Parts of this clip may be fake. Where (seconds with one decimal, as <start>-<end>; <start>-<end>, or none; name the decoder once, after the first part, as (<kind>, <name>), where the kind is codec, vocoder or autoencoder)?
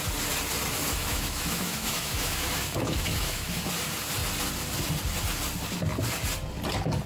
0.8-3.7 (autoencoder, DAC-VAE)